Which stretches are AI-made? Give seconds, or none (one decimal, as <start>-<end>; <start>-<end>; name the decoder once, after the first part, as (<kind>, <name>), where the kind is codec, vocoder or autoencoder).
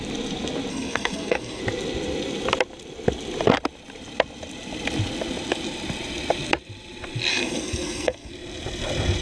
0.7-1.6 (codec, SNAC); 7.3-8.3